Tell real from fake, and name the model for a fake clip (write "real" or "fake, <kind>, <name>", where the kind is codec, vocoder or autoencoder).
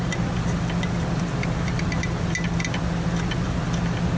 real